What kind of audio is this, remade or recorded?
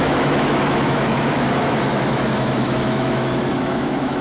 remade